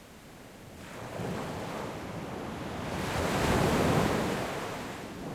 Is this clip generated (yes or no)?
no